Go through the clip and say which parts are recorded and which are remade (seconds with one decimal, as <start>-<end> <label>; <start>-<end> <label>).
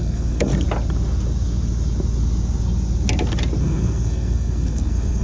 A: 0.0-0.5 remade; 0.5-3.6 recorded; 3.6-5.2 remade